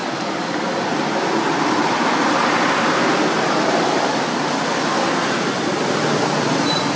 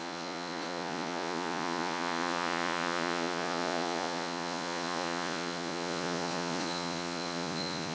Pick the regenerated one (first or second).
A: second